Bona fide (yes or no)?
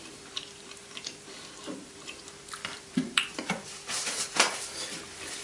no